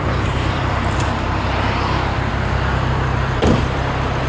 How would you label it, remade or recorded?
remade